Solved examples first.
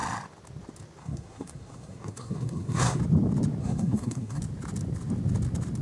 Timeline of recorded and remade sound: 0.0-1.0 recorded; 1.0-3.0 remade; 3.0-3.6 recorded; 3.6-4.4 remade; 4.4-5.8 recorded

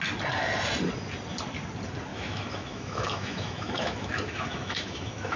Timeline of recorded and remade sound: 0.0-2.1 recorded; 2.1-5.4 remade

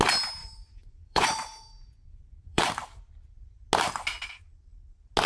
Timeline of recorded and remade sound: 0.0-0.4 recorded; 0.4-2.6 remade; 2.6-5.3 recorded

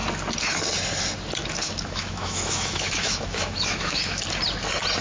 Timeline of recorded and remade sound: 0.0-1.4 recorded; 1.4-4.2 remade; 4.2-5.0 recorded

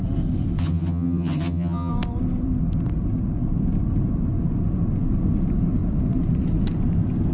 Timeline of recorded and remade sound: 0.0-0.6 recorded; 0.6-1.9 remade; 1.9-7.3 recorded

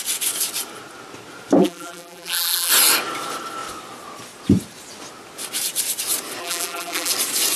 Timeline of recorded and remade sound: 0.0-1.6 recorded; 1.6-2.7 remade; 2.7-6.4 recorded; 6.4-7.1 remade; 7.1-7.6 recorded